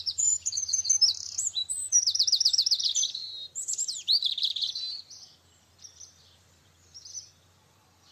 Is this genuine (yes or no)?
no